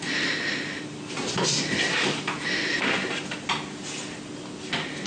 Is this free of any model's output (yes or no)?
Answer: yes